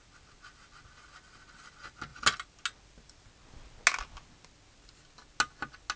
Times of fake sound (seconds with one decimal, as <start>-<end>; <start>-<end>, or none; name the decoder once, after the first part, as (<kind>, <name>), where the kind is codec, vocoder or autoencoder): none